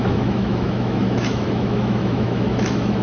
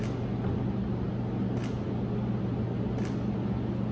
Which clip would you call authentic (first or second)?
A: second